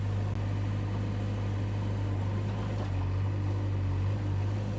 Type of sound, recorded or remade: recorded